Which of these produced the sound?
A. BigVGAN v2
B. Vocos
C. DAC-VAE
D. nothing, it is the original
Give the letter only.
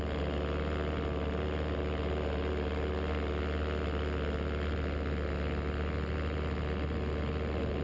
D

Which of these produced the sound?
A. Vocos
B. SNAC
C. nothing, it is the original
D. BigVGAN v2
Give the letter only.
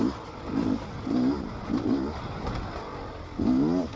C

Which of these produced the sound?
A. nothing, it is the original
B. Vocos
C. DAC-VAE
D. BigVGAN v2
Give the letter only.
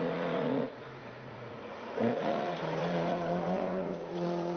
B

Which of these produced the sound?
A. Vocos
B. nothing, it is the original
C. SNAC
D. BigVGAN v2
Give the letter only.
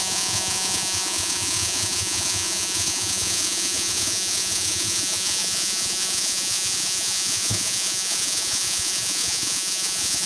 A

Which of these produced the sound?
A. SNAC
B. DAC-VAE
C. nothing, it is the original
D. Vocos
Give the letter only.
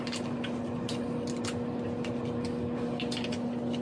C